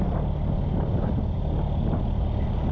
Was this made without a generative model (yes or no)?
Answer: yes